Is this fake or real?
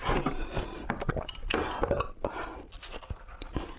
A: real